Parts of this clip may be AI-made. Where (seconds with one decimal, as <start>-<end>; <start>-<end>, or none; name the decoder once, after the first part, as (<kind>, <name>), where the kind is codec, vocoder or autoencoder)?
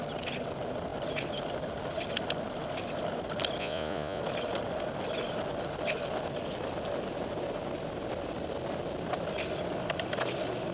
3.6-4.2 (vocoder, Vocos)